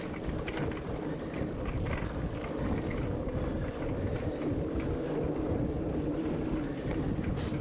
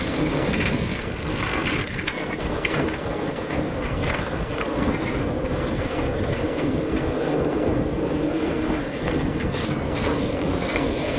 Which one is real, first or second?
first